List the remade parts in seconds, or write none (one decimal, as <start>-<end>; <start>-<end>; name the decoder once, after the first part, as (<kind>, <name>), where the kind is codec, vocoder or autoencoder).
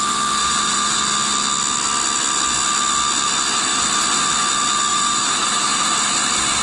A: 0.4-1.0 (vocoder, BigVGAN v2); 4.9-5.8